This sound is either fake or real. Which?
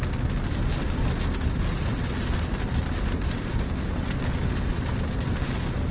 real